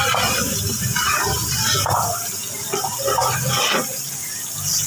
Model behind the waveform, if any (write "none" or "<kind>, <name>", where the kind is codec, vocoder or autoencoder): none